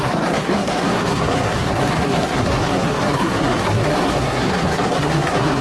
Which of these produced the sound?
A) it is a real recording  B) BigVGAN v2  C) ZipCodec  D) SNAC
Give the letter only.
D